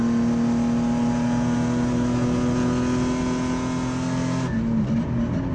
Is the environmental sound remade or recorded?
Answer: recorded